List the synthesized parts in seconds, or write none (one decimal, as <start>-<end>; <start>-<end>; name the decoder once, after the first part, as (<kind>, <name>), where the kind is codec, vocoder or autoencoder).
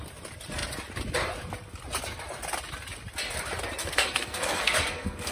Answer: 3.8-5.3 (codec, SNAC)